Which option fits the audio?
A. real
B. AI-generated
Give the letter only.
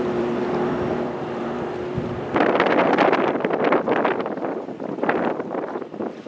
B